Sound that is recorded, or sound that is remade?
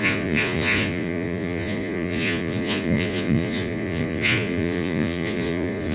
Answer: remade